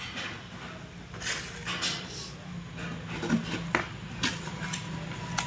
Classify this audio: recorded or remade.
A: recorded